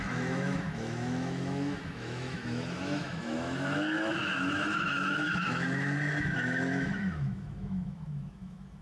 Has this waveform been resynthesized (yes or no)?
yes